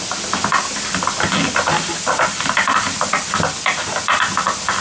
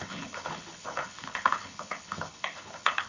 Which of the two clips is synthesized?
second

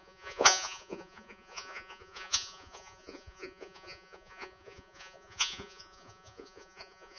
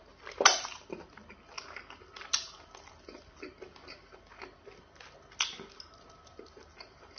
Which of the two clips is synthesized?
first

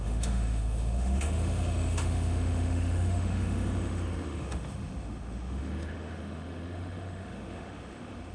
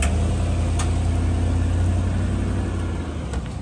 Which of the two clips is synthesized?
first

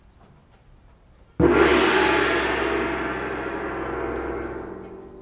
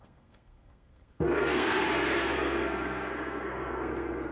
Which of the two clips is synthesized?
second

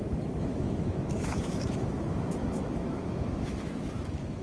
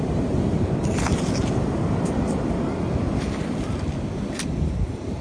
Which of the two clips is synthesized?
first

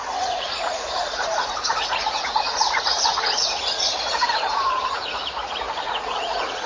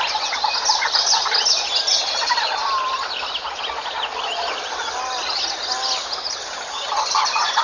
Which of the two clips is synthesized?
first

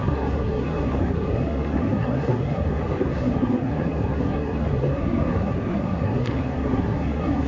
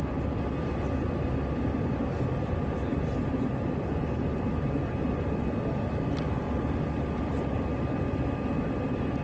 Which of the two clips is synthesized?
first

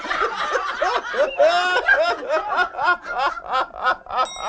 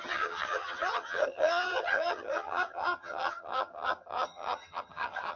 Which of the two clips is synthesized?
second